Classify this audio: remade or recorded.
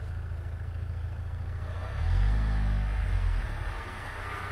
remade